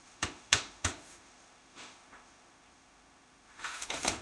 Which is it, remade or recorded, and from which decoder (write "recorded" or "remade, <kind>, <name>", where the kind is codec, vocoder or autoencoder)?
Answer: remade, autoencoder, DAC-VAE